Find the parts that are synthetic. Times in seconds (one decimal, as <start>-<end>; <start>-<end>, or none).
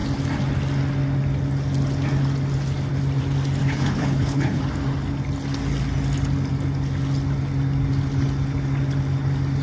3.6-4.6